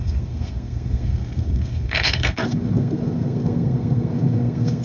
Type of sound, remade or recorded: remade